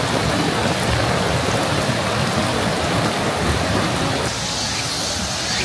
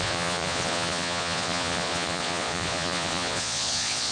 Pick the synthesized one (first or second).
second